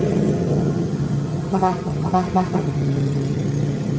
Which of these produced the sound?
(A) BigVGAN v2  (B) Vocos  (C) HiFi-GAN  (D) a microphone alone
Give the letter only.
C